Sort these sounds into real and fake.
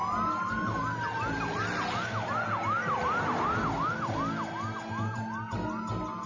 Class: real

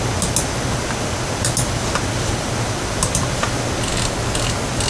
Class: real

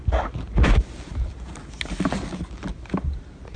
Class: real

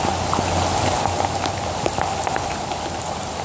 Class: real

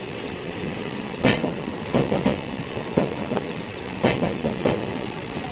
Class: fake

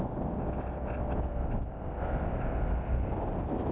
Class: real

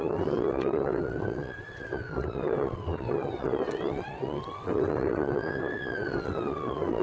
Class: fake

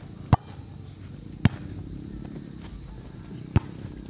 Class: real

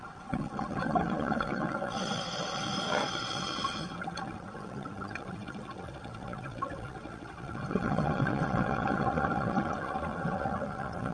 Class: fake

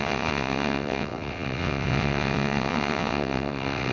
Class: fake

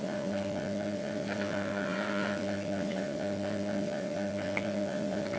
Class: fake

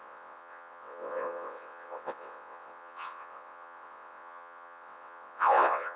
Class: fake